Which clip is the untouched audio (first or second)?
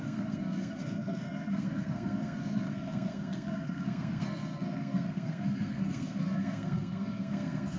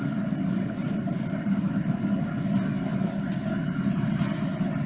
second